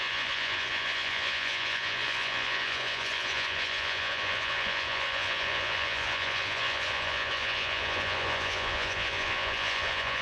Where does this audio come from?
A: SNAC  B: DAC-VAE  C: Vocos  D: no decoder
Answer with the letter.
C